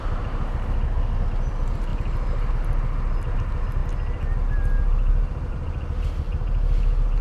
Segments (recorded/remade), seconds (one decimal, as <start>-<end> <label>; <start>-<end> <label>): 0.0-7.2 recorded